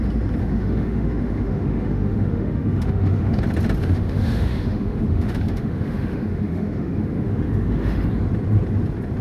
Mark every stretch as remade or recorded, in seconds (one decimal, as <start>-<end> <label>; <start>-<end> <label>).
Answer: 0.0-0.4 recorded; 0.4-3.4 remade; 3.4-3.8 recorded; 3.8-8.1 remade; 8.1-9.2 recorded